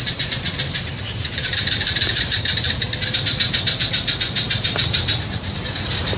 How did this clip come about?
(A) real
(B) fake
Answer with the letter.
B